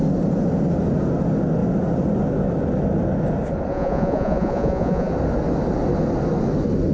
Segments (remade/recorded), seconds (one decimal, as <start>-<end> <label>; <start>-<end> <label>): 0.0-3.7 recorded; 3.7-5.1 remade; 5.1-6.9 recorded